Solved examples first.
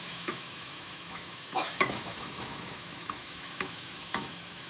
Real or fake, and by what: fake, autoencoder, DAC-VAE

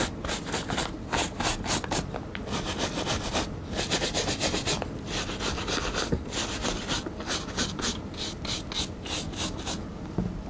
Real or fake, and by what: real